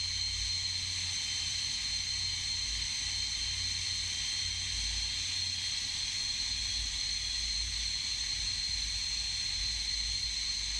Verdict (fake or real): real